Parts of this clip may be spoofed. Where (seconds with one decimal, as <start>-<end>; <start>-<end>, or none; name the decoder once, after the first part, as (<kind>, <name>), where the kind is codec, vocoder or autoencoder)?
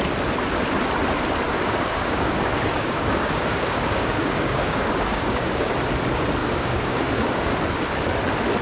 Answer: 1.5-5.7 (codec, DAC); 6.4-7.6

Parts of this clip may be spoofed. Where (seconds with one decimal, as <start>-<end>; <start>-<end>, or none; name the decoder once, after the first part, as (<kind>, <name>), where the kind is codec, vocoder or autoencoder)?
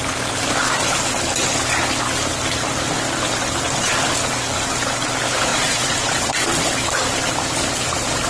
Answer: 5.5-6.7 (vocoder, Vocos)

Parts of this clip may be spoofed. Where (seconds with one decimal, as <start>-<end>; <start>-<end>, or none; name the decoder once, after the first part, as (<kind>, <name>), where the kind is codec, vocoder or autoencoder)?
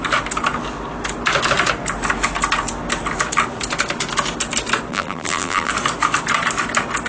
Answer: 4.9-5.7 (vocoder, BigVGAN v2)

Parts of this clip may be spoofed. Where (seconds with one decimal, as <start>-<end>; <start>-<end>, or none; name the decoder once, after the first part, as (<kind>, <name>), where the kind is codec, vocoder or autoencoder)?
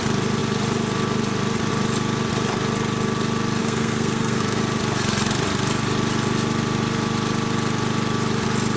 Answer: 3.6-4.6 (codec, SNAC)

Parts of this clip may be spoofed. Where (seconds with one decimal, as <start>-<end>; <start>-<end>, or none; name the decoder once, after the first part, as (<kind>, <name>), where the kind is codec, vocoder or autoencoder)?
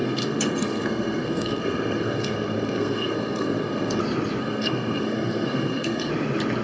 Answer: 0.0-4.0 (codec, SNAC); 4.4-6.1